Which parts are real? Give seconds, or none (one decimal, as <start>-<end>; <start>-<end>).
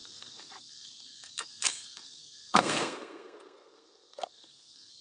none